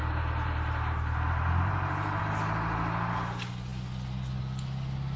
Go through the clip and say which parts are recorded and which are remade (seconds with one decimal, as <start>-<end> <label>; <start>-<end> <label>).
0.0-2.2 remade; 2.2-5.2 recorded